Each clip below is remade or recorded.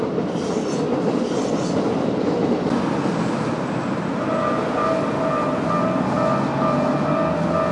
recorded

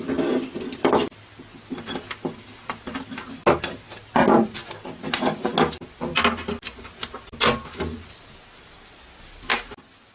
recorded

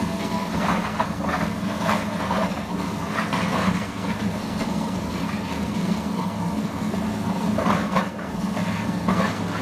remade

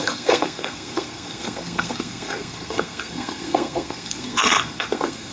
remade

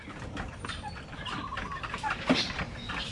recorded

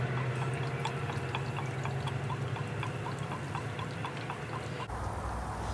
recorded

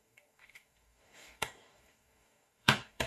remade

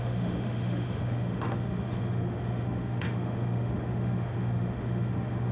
remade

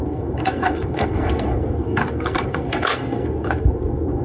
remade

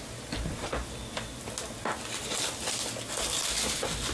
recorded